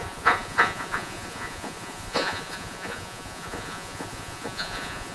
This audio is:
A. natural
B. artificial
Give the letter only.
B